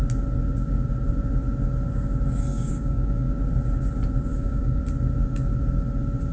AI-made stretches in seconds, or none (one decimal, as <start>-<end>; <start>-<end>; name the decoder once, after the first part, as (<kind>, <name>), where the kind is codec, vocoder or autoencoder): 2.5-3.3 (codec, DAC); 4.3-4.8